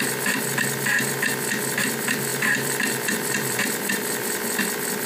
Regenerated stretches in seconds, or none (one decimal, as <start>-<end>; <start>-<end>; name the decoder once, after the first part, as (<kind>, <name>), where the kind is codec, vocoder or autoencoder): 2.3-4.6 (vocoder, BigVGAN v2)